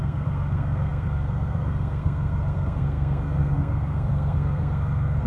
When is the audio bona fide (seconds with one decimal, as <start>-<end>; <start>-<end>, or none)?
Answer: none